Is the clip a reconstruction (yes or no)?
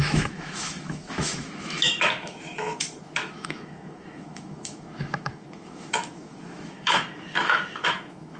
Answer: yes